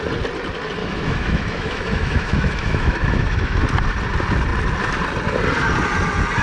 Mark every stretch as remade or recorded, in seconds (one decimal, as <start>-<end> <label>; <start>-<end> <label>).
0.0-0.8 recorded; 0.8-3.6 remade; 3.6-6.4 recorded